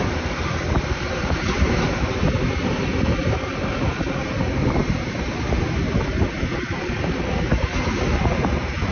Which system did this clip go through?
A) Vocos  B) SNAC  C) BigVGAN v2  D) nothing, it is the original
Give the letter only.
C